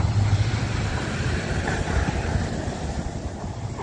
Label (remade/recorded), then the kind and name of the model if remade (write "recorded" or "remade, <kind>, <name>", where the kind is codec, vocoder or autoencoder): remade, vocoder, BigVGAN v2